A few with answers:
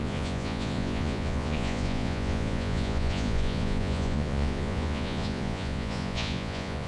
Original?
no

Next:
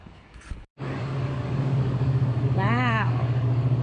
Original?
no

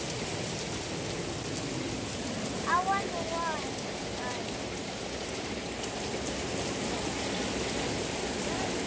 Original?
yes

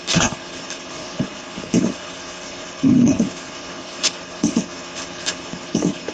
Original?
no